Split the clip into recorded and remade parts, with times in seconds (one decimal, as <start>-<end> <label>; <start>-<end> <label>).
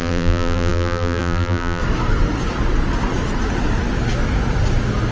0.0-1.8 remade; 1.8-5.1 recorded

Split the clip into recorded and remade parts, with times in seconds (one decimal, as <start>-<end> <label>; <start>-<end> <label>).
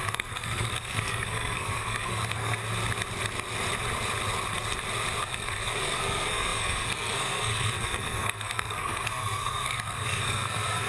0.0-2.6 remade; 2.6-5.2 recorded; 5.2-10.9 remade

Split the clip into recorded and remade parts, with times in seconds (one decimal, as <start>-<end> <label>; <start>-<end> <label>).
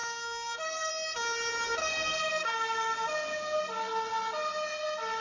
0.0-0.9 remade; 0.9-1.8 recorded; 1.8-3.6 remade; 3.6-5.2 recorded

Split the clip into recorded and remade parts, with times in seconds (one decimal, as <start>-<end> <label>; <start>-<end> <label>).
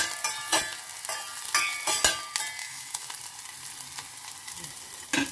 0.0-2.6 recorded; 2.6-3.1 remade; 3.1-5.3 recorded